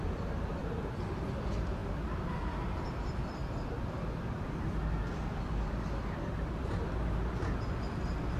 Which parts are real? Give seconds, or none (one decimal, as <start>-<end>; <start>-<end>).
0.0-8.4